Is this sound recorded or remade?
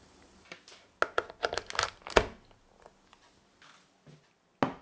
recorded